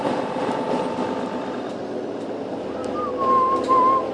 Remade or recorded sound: recorded